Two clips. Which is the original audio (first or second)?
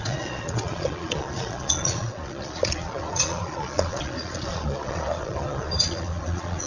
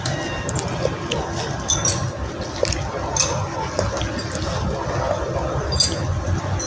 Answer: second